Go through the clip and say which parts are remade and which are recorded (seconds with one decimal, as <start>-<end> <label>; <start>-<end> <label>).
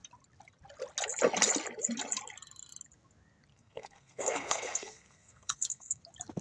0.0-3.5 recorded; 3.5-6.0 remade; 6.0-6.4 recorded